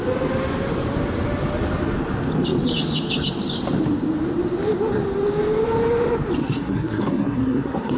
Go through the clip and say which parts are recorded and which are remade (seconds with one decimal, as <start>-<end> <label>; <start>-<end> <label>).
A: 0.0-6.4 recorded; 6.4-8.0 remade